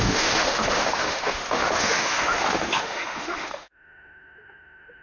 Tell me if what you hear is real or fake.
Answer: fake